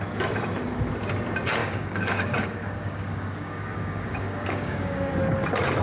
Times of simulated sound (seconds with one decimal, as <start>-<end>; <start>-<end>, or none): 1.6-5.1